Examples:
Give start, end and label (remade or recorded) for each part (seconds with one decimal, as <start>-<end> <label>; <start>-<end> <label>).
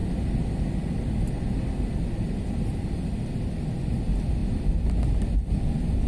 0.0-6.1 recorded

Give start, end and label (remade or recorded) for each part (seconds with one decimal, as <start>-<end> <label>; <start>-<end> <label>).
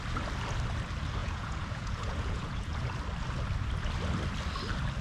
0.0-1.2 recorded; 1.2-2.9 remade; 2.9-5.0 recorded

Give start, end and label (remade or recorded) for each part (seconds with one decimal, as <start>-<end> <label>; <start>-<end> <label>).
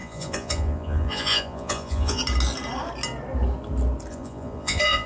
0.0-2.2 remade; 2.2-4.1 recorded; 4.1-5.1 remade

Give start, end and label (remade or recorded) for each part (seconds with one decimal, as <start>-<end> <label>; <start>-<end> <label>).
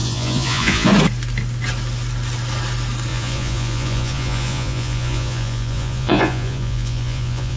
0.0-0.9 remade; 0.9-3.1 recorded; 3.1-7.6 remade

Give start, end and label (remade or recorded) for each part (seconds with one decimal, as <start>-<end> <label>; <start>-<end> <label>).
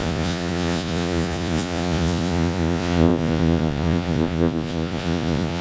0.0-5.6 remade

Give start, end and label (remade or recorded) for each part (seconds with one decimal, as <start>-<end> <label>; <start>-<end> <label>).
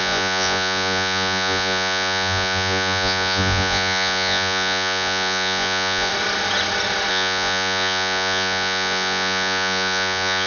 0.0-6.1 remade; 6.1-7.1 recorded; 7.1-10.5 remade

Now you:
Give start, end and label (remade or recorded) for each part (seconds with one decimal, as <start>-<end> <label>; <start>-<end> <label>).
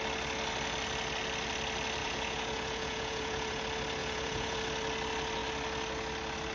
0.0-2.0 recorded; 2.0-3.6 remade; 3.6-4.0 recorded; 4.0-4.6 remade; 4.6-6.5 recorded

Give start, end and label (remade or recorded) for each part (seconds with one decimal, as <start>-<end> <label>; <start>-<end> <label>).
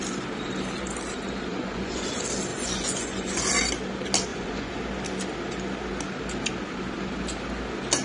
0.0-1.5 recorded; 1.5-2.1 remade; 2.1-2.5 recorded; 2.5-3.5 remade; 3.5-4.3 recorded; 4.3-4.8 remade; 4.8-8.0 recorded